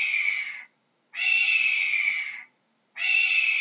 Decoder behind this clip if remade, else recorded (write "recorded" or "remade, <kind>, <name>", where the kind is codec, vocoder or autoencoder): recorded